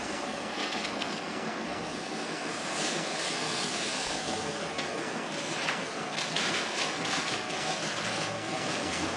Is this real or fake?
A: fake